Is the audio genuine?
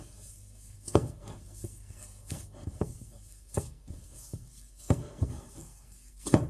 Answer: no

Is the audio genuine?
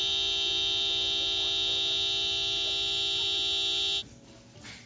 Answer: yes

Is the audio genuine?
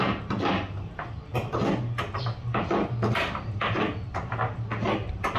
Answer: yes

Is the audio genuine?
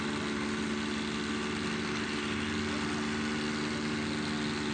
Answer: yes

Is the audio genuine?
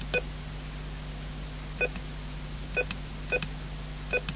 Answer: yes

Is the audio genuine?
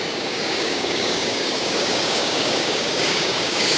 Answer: no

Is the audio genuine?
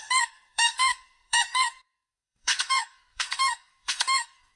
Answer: no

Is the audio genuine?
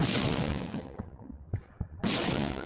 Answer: no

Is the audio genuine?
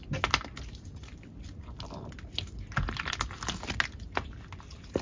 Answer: yes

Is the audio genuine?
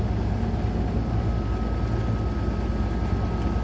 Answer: yes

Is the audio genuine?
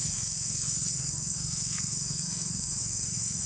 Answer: no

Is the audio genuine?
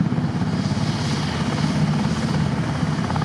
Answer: yes